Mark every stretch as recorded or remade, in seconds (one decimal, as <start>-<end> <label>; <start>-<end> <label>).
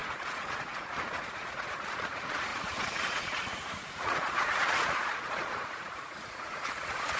0.0-7.2 remade